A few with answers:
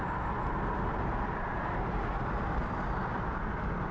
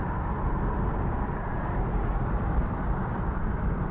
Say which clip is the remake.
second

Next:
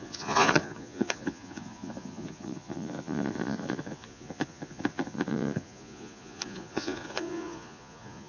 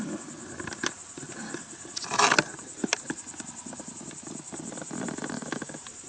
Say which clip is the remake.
first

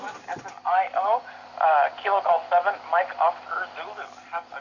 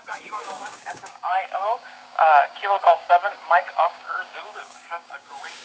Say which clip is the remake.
second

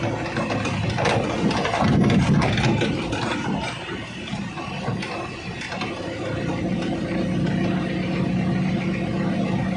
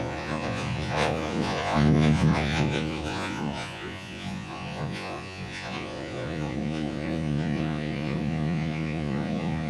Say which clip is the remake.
second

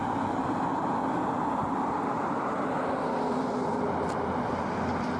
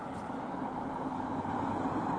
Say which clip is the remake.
second